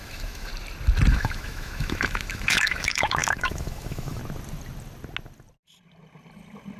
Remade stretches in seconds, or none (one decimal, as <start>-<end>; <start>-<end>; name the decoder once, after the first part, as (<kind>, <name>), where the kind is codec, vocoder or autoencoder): 0.0-0.5 (autoencoder, DAC-VAE); 1.1-4.2